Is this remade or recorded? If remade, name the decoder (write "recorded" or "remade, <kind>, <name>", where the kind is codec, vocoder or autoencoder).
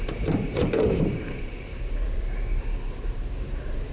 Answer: remade, vocoder, BigVGAN v2